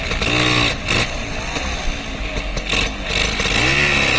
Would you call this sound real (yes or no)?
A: yes